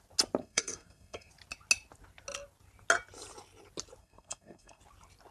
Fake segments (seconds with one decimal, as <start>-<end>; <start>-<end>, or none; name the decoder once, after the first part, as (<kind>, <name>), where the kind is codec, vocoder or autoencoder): 0.4-1.3 (codec, SNAC); 4.0-4.8